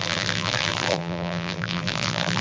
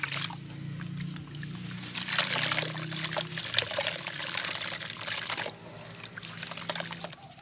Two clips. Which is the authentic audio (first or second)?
second